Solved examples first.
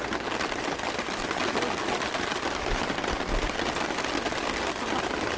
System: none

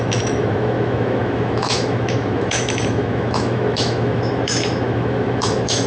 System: autoencoder, DAC-VAE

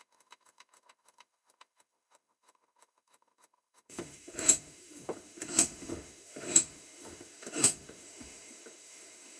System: autoencoder, DAC-VAE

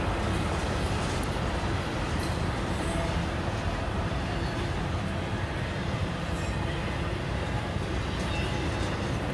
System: none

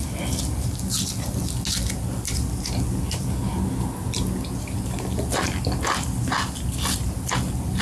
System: none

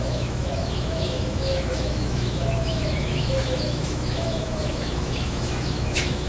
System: autoencoder, DAC-VAE